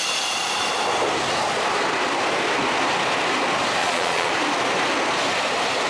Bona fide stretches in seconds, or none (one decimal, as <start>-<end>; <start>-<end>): 0.0-3.8; 4.3-5.9